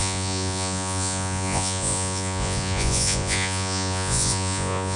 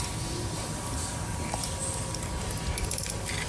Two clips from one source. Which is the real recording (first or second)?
second